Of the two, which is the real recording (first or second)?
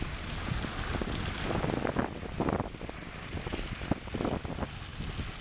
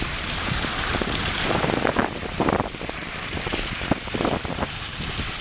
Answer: first